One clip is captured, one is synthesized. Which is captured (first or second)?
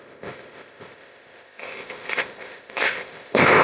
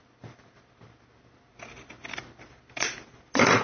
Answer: second